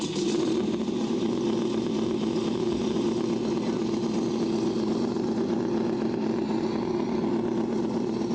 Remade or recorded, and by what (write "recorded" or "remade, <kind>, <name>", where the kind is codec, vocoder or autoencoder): recorded